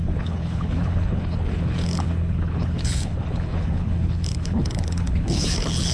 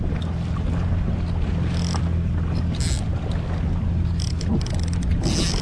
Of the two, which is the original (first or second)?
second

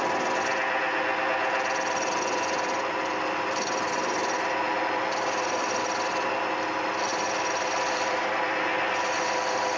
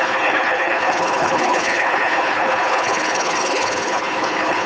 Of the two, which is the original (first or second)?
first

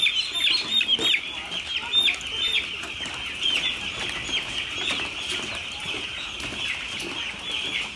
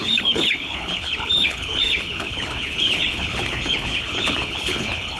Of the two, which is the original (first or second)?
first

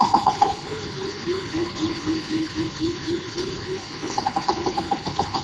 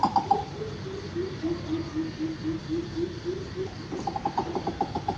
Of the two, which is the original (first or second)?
second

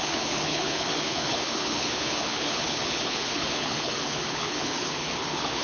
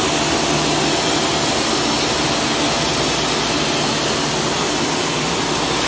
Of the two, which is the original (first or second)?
second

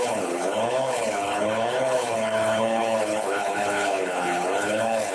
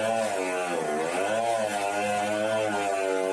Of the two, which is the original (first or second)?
second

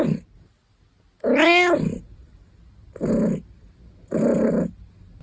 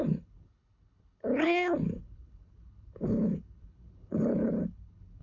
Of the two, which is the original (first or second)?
first